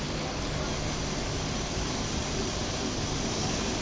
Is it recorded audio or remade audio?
recorded